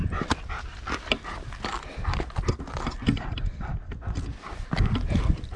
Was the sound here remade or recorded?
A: recorded